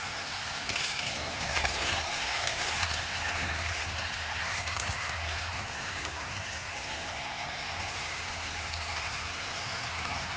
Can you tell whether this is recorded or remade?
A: remade